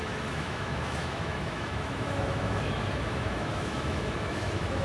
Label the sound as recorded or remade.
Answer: remade